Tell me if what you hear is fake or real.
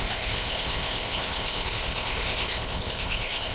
fake